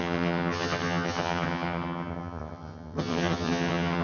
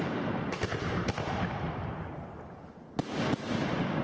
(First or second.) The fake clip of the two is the first